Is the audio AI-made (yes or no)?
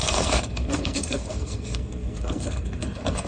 yes